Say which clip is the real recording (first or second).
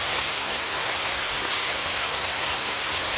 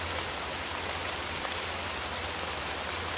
second